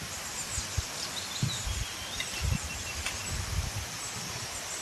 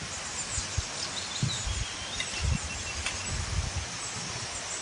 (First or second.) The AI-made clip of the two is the first